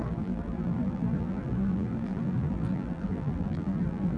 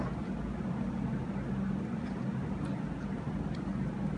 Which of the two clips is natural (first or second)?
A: second